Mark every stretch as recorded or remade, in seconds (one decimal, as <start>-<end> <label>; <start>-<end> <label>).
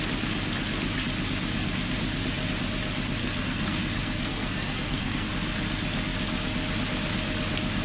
0.0-3.2 recorded; 3.2-5.3 remade; 5.3-7.8 recorded